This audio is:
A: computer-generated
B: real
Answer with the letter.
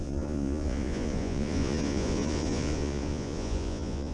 A